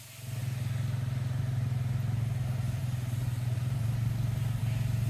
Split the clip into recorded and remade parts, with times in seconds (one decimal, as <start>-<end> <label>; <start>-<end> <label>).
0.0-5.1 recorded

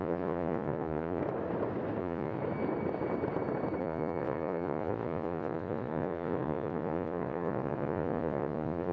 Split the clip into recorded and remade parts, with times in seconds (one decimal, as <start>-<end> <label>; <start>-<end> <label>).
0.0-1.2 remade; 1.2-2.0 recorded; 2.0-2.4 remade; 2.4-3.8 recorded; 3.8-8.9 remade

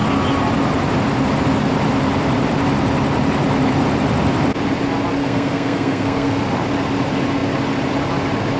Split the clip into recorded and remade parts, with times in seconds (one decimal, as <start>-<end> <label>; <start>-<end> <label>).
0.0-5.2 recorded; 5.2-6.4 remade; 6.4-8.6 recorded